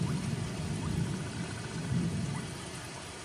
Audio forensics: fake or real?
fake